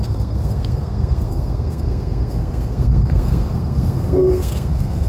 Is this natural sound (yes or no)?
no